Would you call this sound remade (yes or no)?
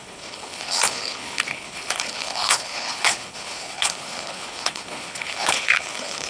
yes